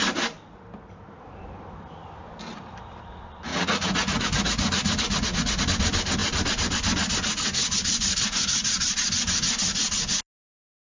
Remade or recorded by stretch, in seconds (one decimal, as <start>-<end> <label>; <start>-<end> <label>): 0.0-3.5 recorded; 3.5-5.6 remade; 5.6-11.0 recorded